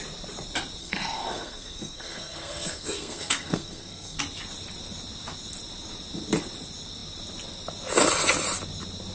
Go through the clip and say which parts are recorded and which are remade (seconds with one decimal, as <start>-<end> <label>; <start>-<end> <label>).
0.0-0.8 recorded; 0.8-4.2 remade; 4.2-9.1 recorded